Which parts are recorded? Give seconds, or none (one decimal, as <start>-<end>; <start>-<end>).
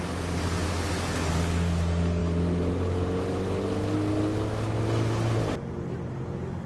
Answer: 0.0-6.7